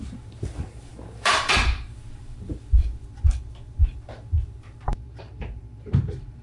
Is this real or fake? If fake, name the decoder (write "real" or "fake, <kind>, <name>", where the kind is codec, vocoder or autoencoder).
fake, vocoder, BigVGAN v2